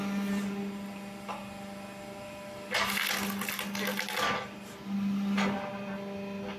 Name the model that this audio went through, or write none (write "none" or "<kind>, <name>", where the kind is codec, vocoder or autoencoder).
none